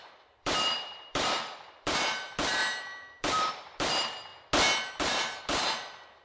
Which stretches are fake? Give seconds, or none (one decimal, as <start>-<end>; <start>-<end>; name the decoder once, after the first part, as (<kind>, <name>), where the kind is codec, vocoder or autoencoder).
0.0-4.3 (vocoder, BigVGAN v2); 4.9-6.2